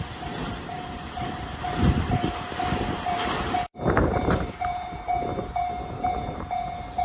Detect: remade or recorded remade